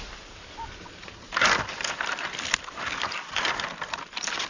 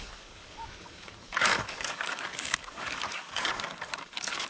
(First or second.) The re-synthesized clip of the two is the second